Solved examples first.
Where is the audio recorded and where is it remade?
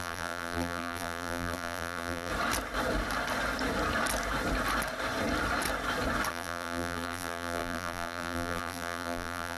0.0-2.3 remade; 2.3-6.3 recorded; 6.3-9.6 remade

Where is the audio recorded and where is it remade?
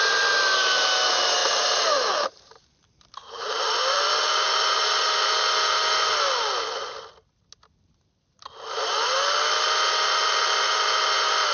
0.0-1.4 recorded; 1.4-5.3 remade; 5.3-11.5 recorded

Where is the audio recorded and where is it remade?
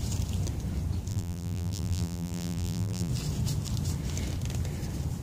0.0-1.1 recorded; 1.1-3.1 remade; 3.1-5.2 recorded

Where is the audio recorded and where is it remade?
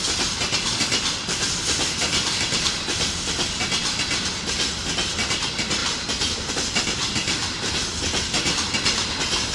0.0-2.0 recorded; 2.0-2.7 remade; 2.7-5.8 recorded; 5.8-6.5 remade; 6.5-9.5 recorded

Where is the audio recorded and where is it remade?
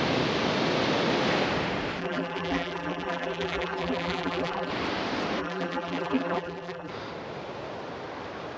0.0-2.0 recorded; 2.0-4.7 remade; 4.7-5.4 recorded; 5.4-6.9 remade; 6.9-8.6 recorded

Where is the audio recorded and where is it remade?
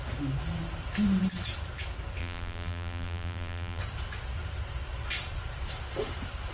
0.0-2.2 recorded; 2.2-3.8 remade; 3.8-6.5 recorded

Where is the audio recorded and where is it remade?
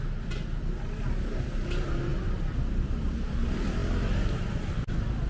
0.0-2.1 recorded; 2.1-2.8 remade; 2.8-5.3 recorded